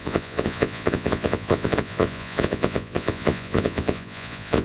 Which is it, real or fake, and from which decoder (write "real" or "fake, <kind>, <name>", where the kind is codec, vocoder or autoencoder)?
fake, vocoder, Vocos